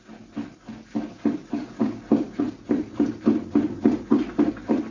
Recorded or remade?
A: recorded